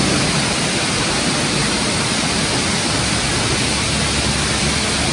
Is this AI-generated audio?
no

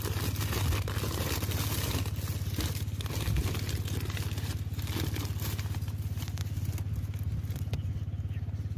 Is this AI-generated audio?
no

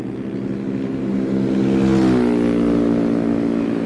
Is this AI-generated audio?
no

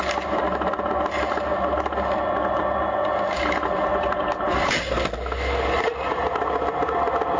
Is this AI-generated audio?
no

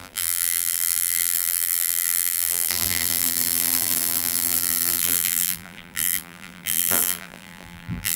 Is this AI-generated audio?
yes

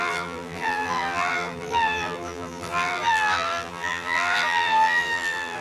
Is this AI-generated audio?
yes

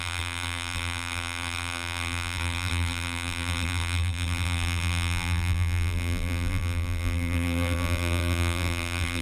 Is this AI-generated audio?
yes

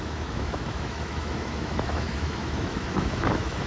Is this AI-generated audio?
yes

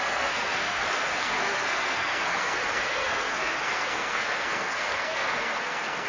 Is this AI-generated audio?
yes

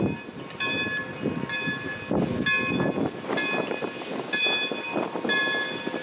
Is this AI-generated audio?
no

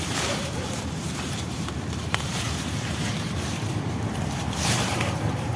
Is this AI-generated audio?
yes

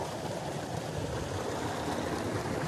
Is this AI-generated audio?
yes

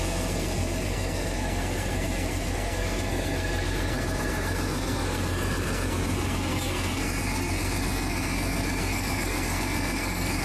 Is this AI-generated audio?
yes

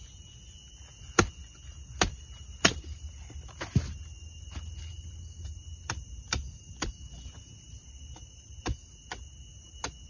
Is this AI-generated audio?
no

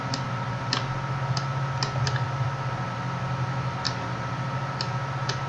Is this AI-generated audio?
no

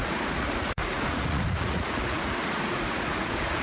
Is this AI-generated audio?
yes